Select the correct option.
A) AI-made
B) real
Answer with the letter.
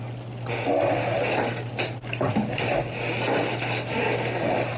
B